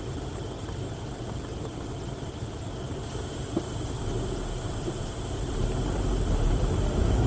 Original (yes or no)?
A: yes